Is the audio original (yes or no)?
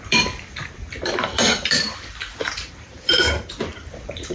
no